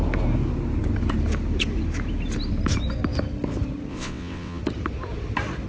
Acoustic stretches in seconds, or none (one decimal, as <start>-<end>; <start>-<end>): 0.0-3.9; 4.6-5.7